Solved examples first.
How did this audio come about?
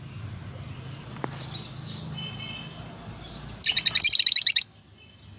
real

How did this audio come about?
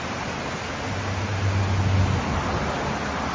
real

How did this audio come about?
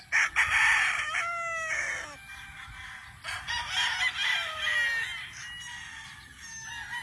real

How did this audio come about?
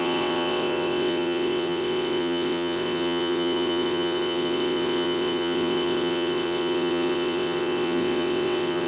fake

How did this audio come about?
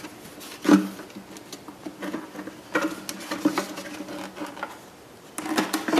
real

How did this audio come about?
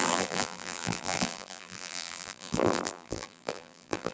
fake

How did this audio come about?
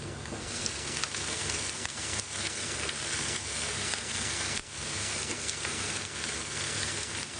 fake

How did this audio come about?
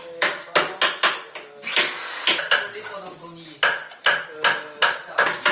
real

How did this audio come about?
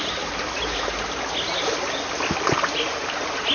real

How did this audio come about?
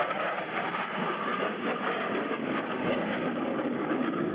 fake